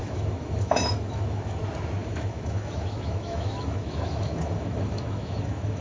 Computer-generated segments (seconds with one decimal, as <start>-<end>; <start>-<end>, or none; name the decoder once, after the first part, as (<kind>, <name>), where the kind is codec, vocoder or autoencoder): 0.0-1.6 (autoencoder, DAC-VAE); 2.0-5.8